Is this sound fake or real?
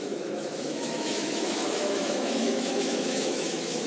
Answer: fake